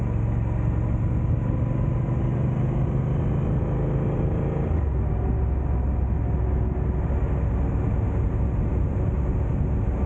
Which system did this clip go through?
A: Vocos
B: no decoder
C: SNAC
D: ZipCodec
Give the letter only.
B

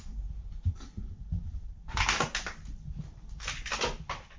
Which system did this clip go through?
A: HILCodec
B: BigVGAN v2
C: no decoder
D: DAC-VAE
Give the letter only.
C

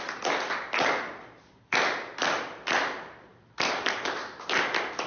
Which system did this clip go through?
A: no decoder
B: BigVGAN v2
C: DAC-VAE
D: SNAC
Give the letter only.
A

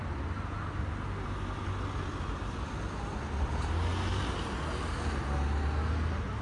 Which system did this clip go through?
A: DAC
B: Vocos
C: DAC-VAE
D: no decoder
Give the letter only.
D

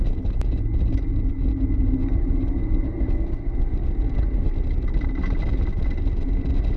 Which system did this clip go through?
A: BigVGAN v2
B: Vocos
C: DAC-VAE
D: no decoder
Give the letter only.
D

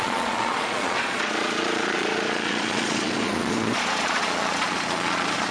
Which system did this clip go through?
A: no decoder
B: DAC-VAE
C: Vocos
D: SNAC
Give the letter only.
C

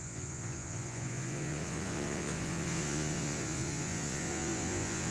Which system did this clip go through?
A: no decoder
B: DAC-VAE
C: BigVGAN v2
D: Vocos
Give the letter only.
D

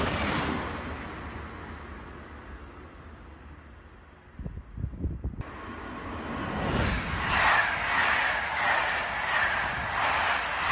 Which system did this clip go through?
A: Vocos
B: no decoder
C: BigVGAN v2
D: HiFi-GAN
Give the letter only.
B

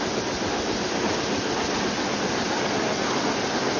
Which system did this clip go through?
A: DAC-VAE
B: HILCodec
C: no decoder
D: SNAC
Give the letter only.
C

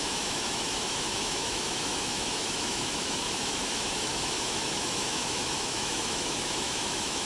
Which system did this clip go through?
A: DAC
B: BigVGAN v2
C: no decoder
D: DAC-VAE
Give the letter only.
D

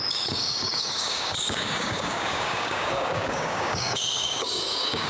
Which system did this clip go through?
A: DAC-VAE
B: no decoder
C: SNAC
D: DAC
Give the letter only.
D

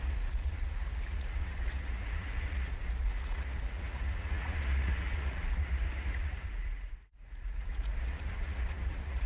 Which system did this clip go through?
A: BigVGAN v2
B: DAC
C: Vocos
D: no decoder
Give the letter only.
C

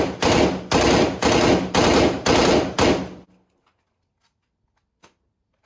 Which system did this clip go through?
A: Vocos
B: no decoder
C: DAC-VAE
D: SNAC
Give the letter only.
B